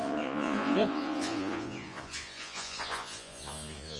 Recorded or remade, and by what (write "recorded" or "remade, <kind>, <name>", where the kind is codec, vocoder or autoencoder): remade, vocoder, Vocos